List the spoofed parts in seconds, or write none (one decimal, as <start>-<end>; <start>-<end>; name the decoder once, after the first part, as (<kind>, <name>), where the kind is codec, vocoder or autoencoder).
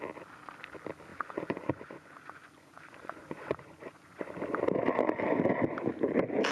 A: 1.1-4.3 (vocoder, Vocos)